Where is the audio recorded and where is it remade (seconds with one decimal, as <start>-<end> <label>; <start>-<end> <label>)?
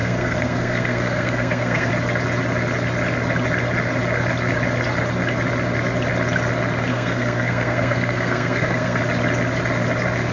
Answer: 0.0-1.9 remade; 1.9-6.9 recorded; 6.9-9.0 remade; 9.0-10.3 recorded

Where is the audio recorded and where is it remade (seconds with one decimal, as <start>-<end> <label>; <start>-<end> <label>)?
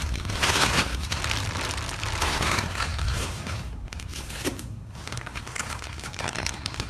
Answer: 0.0-1.2 remade; 1.2-2.2 recorded; 2.2-6.9 remade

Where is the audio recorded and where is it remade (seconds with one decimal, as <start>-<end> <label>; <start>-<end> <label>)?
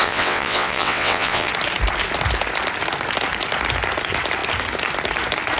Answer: 0.0-1.5 remade; 1.5-5.6 recorded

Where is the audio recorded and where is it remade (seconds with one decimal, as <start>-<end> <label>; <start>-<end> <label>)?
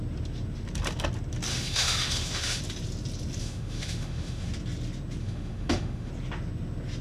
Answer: 0.0-1.5 recorded; 1.5-2.6 remade; 2.6-3.4 recorded; 3.4-4.5 remade; 4.5-5.2 recorded; 5.2-6.1 remade; 6.1-7.0 recorded